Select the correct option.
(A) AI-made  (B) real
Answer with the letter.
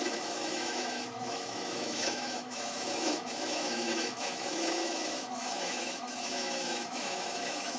A